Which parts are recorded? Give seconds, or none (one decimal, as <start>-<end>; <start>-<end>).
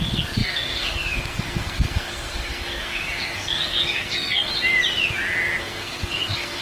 4.5-5.6